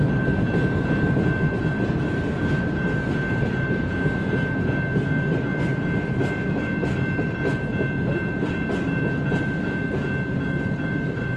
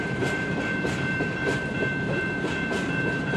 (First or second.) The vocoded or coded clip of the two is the second